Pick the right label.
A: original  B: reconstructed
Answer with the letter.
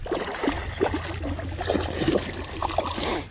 A